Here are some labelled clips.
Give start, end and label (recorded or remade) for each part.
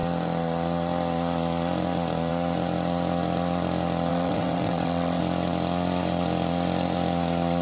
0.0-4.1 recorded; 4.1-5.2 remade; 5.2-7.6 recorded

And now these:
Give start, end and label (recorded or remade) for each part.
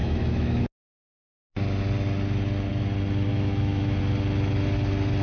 0.0-0.6 remade; 0.6-3.3 recorded; 3.3-4.0 remade; 4.0-5.2 recorded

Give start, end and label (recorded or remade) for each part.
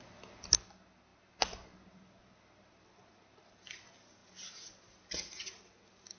0.0-6.2 recorded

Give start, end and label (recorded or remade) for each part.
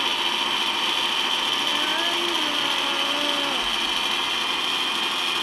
0.0-5.4 recorded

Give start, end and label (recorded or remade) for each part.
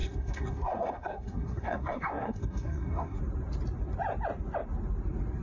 0.0-3.2 remade; 3.2-5.4 recorded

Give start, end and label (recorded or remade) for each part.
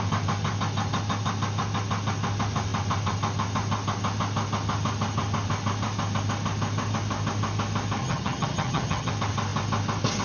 0.0-8.0 recorded; 8.0-9.1 remade; 9.1-10.2 recorded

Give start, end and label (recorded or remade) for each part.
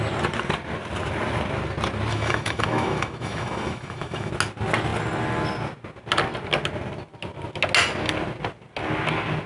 0.0-2.1 recorded; 2.1-4.3 remade; 4.3-9.5 recorded